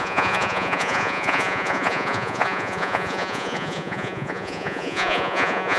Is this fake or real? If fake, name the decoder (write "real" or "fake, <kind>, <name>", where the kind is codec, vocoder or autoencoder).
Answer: fake, vocoder, Vocos